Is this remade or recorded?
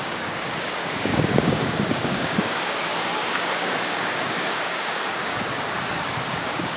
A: remade